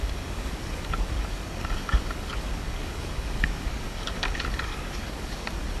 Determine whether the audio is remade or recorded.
remade